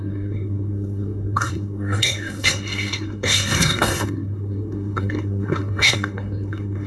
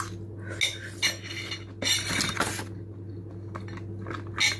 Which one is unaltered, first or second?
second